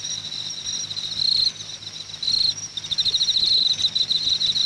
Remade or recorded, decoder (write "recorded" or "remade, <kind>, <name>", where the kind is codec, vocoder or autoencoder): recorded